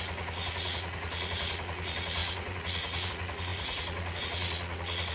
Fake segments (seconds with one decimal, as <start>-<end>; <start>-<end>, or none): 0.0-5.1